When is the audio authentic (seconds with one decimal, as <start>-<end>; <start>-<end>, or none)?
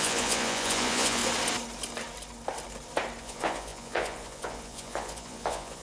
1.2-3.2